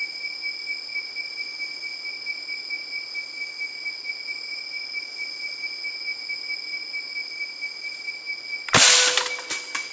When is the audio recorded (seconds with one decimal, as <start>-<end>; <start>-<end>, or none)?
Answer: 0.0-9.9

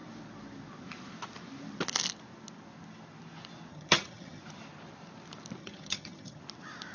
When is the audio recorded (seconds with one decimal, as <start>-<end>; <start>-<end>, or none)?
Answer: 0.0-3.7; 4.4-5.6; 6.4-6.9

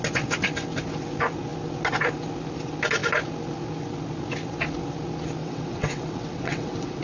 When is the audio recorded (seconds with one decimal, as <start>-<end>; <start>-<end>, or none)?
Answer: 0.0-5.4

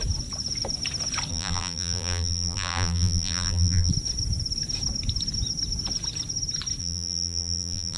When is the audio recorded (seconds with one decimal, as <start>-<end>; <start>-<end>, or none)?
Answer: 0.0-1.3; 3.9-6.8

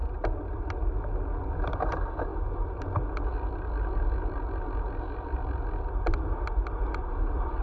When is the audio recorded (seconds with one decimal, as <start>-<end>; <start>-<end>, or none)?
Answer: 0.0-7.6

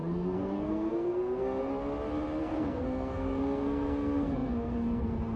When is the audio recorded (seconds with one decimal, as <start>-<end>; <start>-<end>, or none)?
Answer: 1.7-2.4

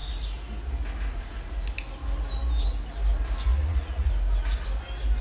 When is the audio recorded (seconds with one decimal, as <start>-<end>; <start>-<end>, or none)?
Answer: 0.0-3.5; 4.1-5.2

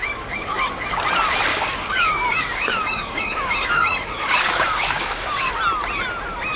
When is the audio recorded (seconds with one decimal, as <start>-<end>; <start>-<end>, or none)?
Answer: 0.9-1.5; 5.5-6.6